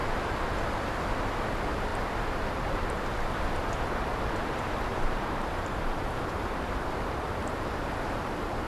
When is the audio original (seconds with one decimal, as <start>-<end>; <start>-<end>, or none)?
0.0-4.9